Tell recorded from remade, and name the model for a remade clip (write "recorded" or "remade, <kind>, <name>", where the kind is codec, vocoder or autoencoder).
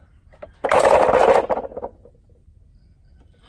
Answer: recorded